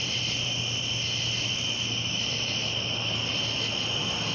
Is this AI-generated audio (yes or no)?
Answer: no